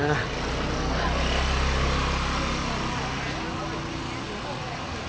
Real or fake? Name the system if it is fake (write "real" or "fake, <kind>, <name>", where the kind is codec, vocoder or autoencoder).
real